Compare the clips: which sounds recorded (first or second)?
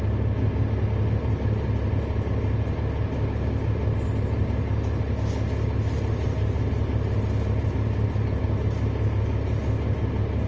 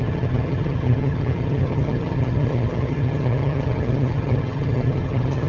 first